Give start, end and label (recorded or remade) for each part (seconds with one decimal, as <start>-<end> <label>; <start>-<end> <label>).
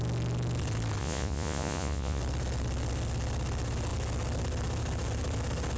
0.0-1.0 recorded; 1.0-2.2 remade; 2.2-5.8 recorded